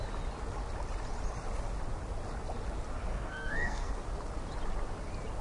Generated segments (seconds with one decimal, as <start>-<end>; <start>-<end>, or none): 3.1-3.9